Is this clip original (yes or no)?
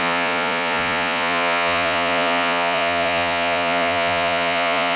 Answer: no